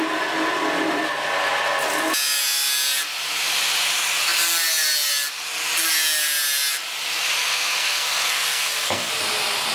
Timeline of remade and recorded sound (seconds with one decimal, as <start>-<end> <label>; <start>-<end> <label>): 0.0-7.4 recorded; 7.4-9.1 remade; 9.1-9.7 recorded